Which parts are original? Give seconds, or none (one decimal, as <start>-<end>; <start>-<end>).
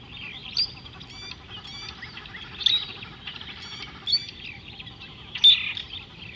0.0-6.4